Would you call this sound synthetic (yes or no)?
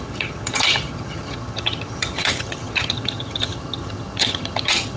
yes